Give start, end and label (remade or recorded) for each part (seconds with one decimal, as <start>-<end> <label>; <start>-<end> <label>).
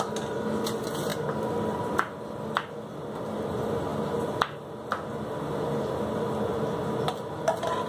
0.0-7.9 recorded